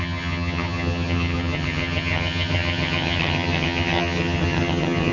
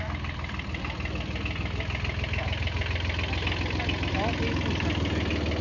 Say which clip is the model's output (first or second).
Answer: first